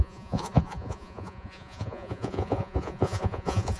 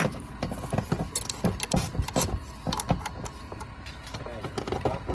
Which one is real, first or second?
second